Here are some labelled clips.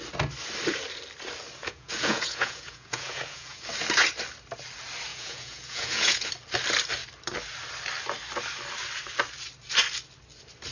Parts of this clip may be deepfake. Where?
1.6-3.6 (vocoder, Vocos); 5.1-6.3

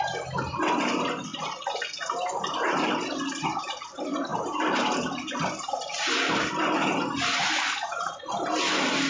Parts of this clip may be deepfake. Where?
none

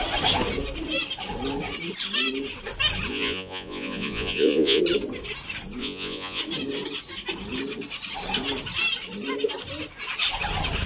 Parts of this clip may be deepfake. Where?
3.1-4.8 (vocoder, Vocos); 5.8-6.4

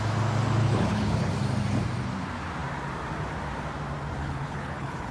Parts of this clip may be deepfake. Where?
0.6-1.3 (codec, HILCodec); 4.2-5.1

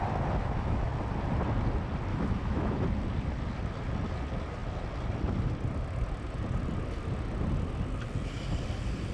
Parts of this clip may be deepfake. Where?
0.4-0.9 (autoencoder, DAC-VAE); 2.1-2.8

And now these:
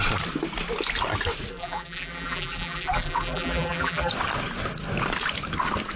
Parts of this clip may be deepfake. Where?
1.5-4.1 (vocoder, BigVGAN v2)

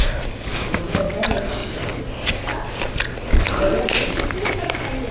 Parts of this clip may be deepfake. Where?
none

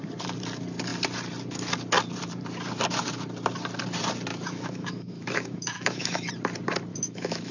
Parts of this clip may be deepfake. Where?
4.3-6.3 (autoencoder, DAC-VAE); 6.9-7.5